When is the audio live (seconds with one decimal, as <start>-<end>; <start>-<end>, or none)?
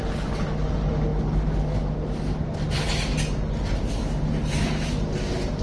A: 0.0-5.6